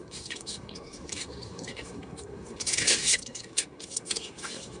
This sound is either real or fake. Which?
fake